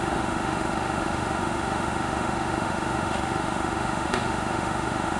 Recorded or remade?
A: remade